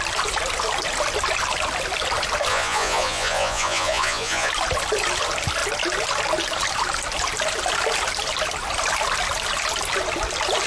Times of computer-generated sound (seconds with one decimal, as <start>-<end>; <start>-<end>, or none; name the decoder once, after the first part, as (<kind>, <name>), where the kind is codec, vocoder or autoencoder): 2.5-4.5 (vocoder, Vocos)

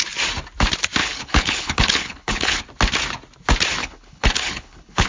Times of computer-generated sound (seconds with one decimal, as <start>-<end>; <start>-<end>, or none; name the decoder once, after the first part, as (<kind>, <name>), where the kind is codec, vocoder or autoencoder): 1.0-2.6 (codec, HILCodec); 3.8-5.1

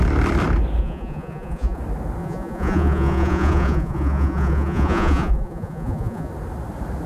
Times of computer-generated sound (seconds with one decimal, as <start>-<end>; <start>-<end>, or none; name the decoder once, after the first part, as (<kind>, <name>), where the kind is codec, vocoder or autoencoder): 0.8-1.8 (vocoder, Vocos); 2.2-6.3

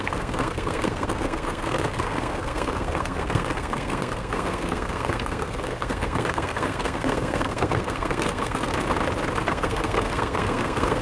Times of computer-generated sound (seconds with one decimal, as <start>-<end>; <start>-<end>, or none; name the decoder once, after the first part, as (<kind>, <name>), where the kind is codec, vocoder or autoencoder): 0.0-8.7 (codec, SNAC); 9.5-11.0

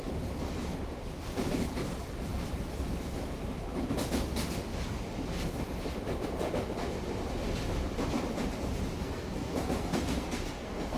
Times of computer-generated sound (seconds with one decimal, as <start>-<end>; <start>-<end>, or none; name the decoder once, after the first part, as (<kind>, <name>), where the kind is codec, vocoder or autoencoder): 9.0-11.0 (codec, SNAC)

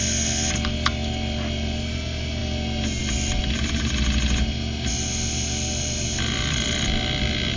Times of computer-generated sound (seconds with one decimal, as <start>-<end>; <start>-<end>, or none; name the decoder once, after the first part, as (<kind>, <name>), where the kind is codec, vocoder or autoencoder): none

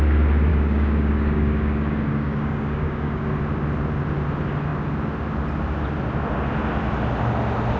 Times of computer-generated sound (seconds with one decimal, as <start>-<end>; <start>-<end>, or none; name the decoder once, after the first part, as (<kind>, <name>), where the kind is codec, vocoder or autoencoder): 0.5-3.3 (codec, DAC)

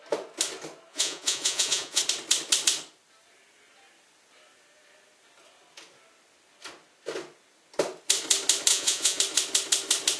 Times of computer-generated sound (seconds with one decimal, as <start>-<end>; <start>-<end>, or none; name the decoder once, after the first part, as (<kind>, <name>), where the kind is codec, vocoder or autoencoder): 0.9-2.0 (vocoder, Vocos); 8.7-9.2